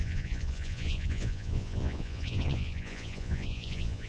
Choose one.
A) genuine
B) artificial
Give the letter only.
B